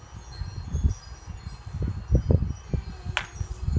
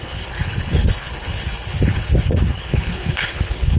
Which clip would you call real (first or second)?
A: first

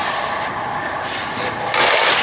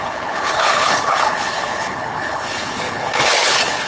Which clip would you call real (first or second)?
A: first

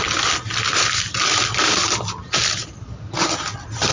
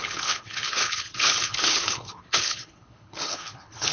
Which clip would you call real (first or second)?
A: first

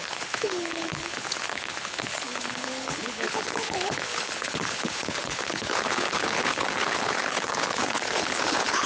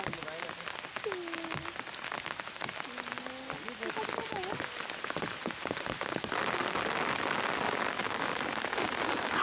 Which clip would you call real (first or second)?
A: second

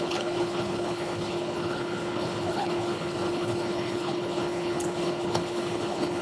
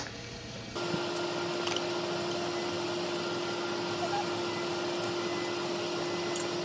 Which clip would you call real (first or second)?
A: second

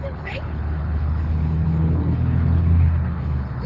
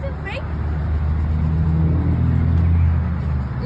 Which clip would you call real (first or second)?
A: second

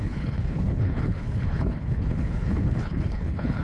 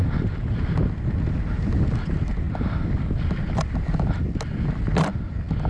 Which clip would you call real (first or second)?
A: second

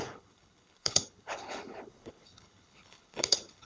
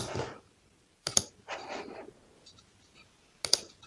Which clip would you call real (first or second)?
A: second